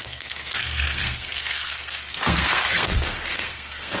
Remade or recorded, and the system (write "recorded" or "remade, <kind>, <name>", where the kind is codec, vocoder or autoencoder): remade, codec, SNAC